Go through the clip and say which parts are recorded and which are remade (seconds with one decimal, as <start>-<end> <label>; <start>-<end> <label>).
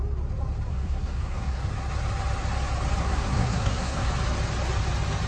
0.0-0.7 recorded; 0.7-1.6 remade; 1.6-3.0 recorded; 3.0-4.1 remade; 4.1-5.3 recorded